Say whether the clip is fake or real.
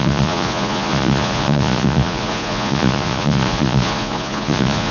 fake